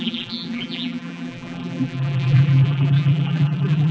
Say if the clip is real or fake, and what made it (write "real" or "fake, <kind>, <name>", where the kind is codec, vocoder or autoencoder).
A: fake, vocoder, BigVGAN v2